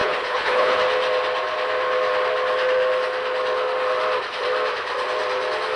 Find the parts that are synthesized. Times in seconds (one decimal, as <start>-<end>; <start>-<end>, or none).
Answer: 0.0-0.8